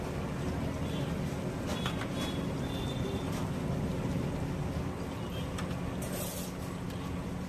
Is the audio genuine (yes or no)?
yes